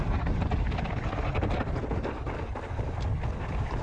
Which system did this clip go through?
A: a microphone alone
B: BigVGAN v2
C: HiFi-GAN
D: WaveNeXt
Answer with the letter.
A